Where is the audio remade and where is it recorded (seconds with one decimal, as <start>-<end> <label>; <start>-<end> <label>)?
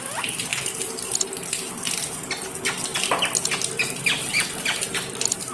0.0-5.5 recorded